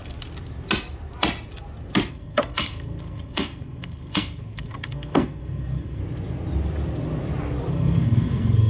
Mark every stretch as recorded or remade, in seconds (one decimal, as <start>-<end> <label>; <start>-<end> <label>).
0.0-2.1 recorded; 2.1-6.0 remade; 6.0-7.7 recorded; 7.7-8.7 remade